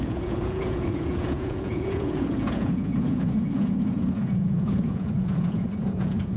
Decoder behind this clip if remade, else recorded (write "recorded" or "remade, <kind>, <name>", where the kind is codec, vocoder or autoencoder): remade, vocoder, Vocos